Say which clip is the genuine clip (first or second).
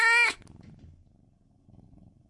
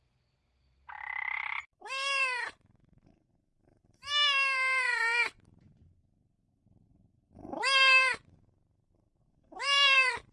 first